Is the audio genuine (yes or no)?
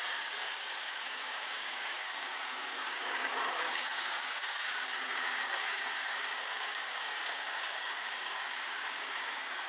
no